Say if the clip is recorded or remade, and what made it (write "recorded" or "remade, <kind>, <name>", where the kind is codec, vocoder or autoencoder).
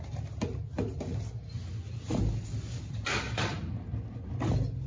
recorded